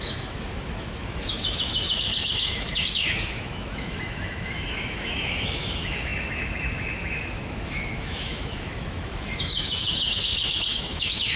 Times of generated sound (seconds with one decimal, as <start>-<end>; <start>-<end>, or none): 0.0-11.4